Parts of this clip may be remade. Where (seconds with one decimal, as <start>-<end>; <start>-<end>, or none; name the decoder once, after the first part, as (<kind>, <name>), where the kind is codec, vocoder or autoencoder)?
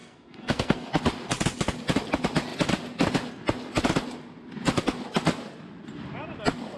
0.0-0.9 (codec, SNAC)